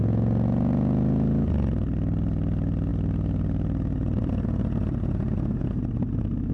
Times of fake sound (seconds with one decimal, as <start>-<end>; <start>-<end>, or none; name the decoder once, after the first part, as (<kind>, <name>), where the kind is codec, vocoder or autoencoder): none